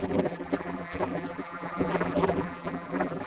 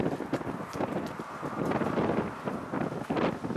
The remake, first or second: first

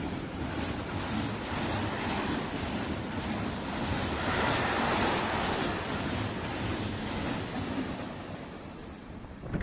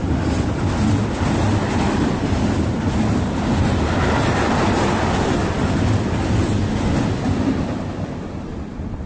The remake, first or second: first